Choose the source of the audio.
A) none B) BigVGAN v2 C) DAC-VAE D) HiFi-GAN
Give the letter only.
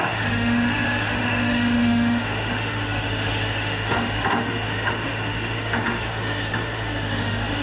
C